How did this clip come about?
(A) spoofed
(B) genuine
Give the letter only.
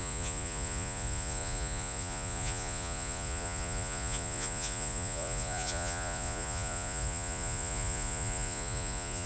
A